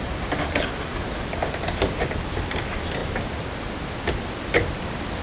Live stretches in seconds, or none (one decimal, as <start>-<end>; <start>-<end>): 0.0-0.9; 1.6-5.2